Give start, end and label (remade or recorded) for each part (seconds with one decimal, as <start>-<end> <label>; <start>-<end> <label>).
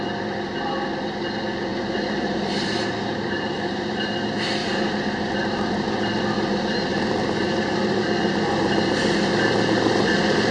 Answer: 0.0-1.7 recorded; 1.7-4.1 remade; 4.1-4.6 recorded; 4.6-6.1 remade; 6.1-6.5 recorded; 6.5-7.3 remade; 7.3-10.5 recorded